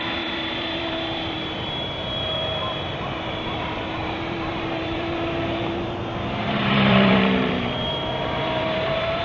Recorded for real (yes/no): no